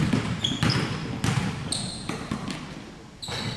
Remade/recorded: recorded